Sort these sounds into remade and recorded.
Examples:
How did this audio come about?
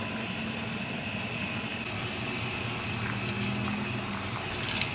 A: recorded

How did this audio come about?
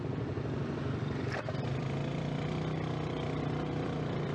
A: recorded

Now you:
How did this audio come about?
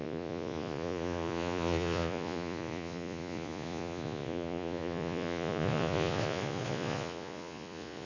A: remade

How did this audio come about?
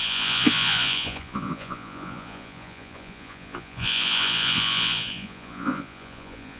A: remade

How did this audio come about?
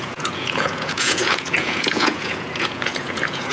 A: remade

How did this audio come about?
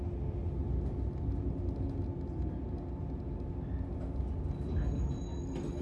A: recorded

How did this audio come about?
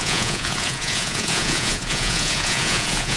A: remade